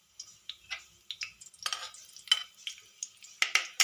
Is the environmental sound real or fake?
real